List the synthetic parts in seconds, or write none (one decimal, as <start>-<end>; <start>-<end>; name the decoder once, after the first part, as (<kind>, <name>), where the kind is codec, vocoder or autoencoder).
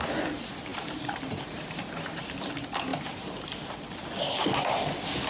0.7-2.3 (vocoder, BigVGAN v2)